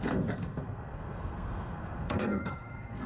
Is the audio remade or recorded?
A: remade